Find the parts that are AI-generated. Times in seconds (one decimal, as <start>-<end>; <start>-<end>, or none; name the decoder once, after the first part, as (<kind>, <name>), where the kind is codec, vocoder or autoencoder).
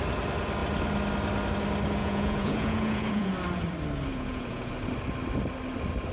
2.0-3.3 (vocoder, Vocos); 4.1-4.7